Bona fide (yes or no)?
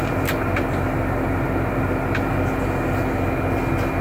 yes